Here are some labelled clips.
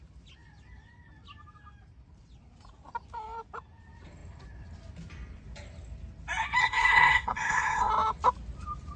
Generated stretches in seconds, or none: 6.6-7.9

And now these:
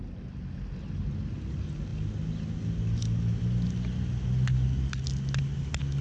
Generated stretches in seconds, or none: none

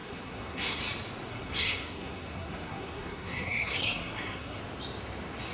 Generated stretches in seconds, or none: 0.0-0.8; 1.3-4.6

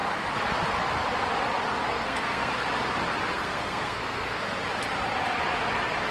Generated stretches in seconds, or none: 1.9-2.5; 3.3-4.4

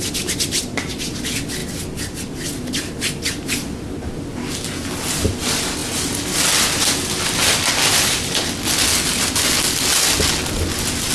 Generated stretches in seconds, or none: none

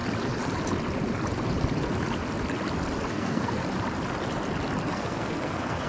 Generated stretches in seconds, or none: 3.1-3.6; 4.9-5.9